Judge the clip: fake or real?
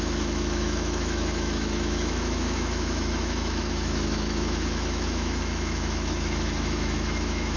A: fake